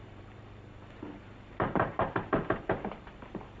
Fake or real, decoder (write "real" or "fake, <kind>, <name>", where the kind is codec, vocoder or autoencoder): fake, vocoder, BigVGAN v2